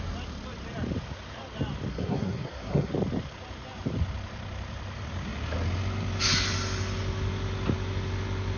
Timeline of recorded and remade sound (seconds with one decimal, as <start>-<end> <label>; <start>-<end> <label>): 0.0-1.9 recorded; 1.9-2.9 remade; 2.9-8.6 recorded